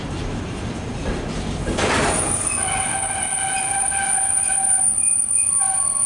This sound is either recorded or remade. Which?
recorded